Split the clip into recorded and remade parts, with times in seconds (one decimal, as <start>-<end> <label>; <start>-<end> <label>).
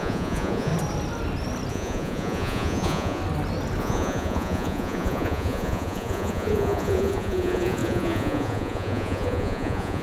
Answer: 0.0-0.7 remade; 0.7-1.7 recorded; 1.7-3.2 remade; 3.2-3.8 recorded; 3.8-10.0 remade